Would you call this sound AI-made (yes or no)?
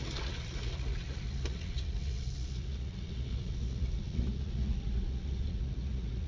yes